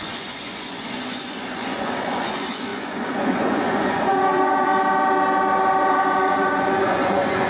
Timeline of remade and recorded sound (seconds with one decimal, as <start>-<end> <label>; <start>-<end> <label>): 0.0-4.7 remade; 4.7-5.9 recorded; 5.9-7.5 remade